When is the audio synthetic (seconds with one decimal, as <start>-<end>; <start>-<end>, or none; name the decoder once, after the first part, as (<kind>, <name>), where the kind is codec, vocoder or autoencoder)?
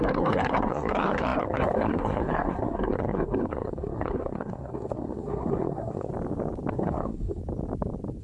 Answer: 0.0-6.1 (codec, SNAC); 6.7-7.4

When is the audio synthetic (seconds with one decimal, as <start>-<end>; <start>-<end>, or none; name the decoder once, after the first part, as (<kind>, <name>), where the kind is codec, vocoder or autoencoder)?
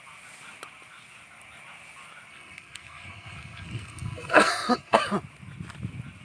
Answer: 2.3-5.0 (codec, SNAC)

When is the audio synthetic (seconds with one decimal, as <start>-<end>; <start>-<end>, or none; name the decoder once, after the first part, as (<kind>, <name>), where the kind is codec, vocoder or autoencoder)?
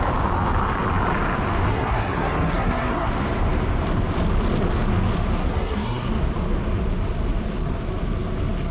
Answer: 1.7-3.1 (codec, SNAC); 5.4-6.1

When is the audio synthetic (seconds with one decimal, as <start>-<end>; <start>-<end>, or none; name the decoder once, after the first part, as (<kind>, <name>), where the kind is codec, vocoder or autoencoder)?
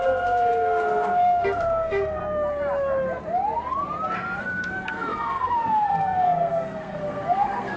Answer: 0.0-2.2 (codec, SNAC); 4.4-7.8